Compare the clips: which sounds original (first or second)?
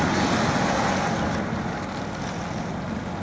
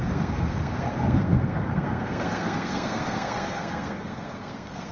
first